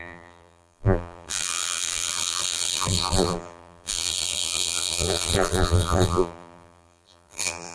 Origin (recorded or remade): remade